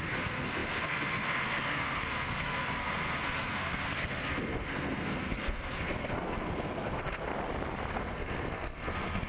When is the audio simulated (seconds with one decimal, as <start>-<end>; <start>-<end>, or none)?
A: 0.0-7.3; 8.0-9.3